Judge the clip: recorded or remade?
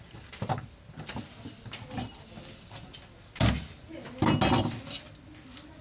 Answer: recorded